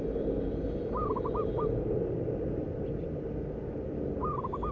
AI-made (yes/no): no